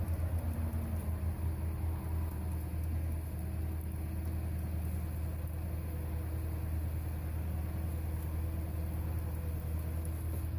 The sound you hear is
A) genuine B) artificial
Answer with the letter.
A